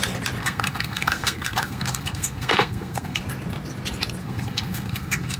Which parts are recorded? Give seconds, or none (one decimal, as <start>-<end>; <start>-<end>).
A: 0.0-0.4; 3.2-4.2